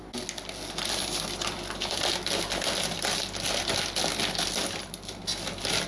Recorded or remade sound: recorded